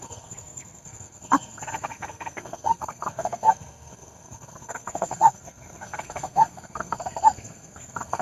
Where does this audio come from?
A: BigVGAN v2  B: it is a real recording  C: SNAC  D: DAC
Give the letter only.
C